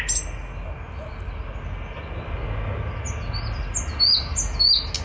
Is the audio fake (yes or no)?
no